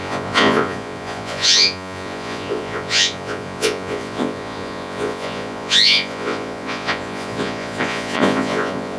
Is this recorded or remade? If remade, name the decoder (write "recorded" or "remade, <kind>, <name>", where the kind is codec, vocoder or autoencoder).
remade, vocoder, Vocos